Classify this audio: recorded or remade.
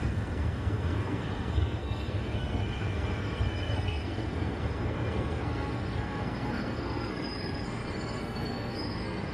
remade